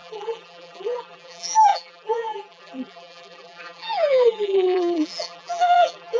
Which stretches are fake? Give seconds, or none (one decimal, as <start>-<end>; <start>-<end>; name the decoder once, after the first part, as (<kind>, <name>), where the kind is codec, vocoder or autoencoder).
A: 0.0-6.2 (vocoder, BigVGAN v2)